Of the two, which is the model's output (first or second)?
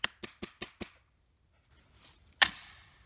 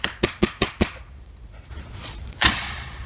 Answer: second